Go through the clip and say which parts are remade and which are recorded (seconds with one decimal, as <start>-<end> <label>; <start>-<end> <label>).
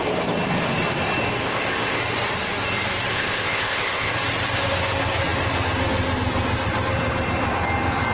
0.0-1.4 recorded; 1.4-2.0 remade; 2.0-3.1 recorded; 3.1-4.1 remade; 4.1-8.1 recorded